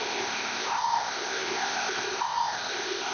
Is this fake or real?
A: fake